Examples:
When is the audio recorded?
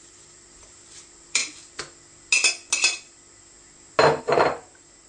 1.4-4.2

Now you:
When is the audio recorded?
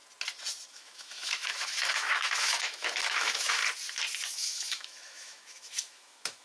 0.0-0.7; 3.6-4.3